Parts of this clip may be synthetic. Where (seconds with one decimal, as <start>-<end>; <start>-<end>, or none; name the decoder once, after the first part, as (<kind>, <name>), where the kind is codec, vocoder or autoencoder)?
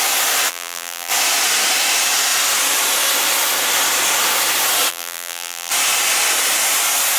0.5-1.1 (vocoder, BigVGAN v2); 4.9-5.7